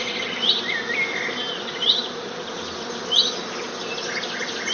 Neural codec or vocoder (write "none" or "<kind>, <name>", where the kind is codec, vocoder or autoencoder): none